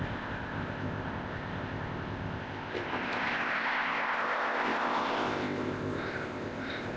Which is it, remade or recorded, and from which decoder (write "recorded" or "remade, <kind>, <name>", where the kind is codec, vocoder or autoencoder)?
remade, codec, ZipCodec